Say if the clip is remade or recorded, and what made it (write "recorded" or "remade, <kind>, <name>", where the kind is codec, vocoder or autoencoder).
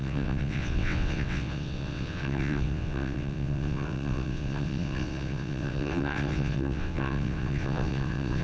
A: remade, vocoder, WaveNeXt